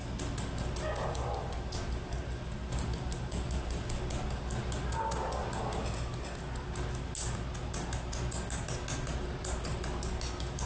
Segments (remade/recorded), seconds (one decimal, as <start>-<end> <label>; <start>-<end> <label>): 0.0-10.7 recorded